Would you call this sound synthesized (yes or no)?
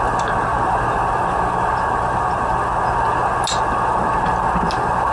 no